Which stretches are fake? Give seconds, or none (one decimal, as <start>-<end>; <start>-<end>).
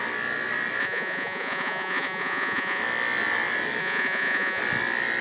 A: 0.8-2.8; 3.8-4.6